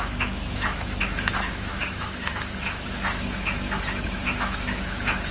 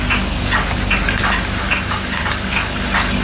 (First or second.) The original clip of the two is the second